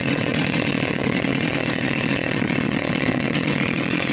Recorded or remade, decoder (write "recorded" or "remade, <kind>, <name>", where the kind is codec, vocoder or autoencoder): remade, vocoder, WaveNeXt